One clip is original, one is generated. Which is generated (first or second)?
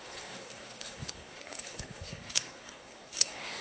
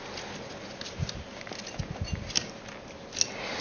first